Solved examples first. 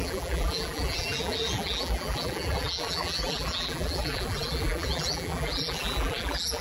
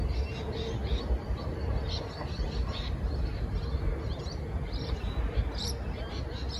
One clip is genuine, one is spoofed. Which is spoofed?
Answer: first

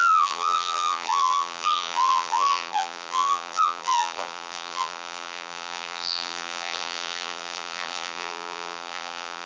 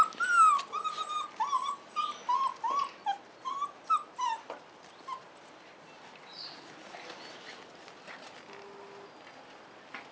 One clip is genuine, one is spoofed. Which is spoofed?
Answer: first